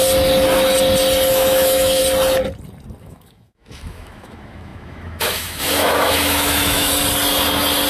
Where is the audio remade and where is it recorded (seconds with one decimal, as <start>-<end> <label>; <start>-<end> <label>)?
0.0-1.3 recorded; 1.3-2.0 remade; 2.0-3.0 recorded; 3.0-6.9 remade; 6.9-7.9 recorded